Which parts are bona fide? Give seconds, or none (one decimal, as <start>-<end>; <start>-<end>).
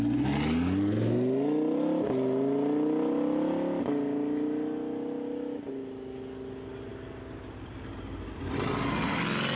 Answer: 0.0-9.6